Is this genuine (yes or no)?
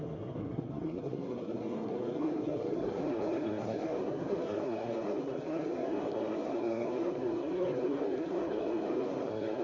no